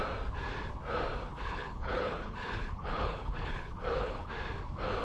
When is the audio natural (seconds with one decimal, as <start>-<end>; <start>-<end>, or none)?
0.0-1.3; 4.3-5.0